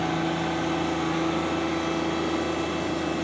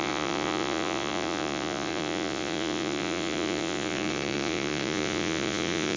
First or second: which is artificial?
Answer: second